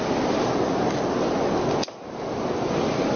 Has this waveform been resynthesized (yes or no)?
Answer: no